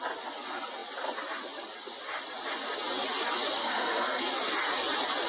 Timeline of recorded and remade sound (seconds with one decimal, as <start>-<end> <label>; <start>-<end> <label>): 0.0-3.6 recorded; 3.6-4.2 remade; 4.2-5.3 recorded